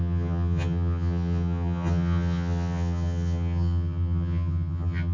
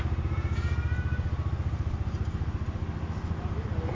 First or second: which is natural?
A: second